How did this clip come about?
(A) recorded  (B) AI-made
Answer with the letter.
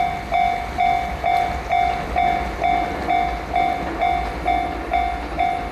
A